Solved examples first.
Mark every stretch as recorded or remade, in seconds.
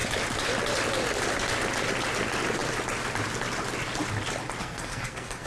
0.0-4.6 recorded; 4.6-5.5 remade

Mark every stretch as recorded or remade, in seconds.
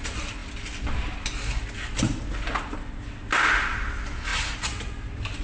0.0-4.3 recorded; 4.3-5.0 remade; 5.0-5.4 recorded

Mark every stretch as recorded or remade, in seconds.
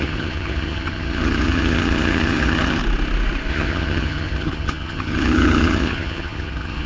0.0-2.8 remade; 2.8-3.5 recorded; 3.5-6.9 remade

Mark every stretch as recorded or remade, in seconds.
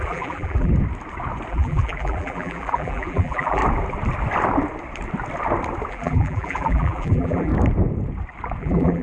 0.0-0.7 remade; 0.7-1.5 recorded; 1.5-3.6 remade; 3.6-5.9 recorded; 5.9-7.5 remade; 7.5-8.6 recorded; 8.6-9.0 remade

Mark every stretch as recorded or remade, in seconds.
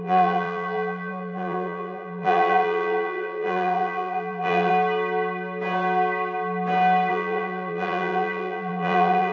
0.0-4.7 remade; 4.7-7.1 recorded; 7.1-9.3 remade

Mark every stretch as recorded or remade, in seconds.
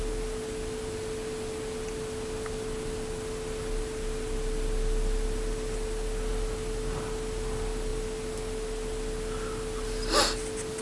0.0-10.8 recorded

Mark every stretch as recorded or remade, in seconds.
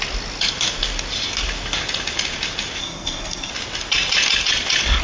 0.0-2.8 recorded; 2.8-3.5 remade; 3.5-5.0 recorded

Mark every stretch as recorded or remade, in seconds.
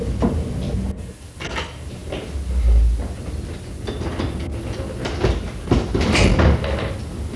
0.0-7.4 recorded